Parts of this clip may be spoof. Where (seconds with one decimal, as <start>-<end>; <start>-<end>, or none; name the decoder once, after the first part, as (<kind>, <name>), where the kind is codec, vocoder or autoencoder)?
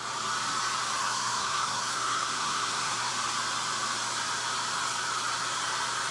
1.0-3.1 (codec, SNAC)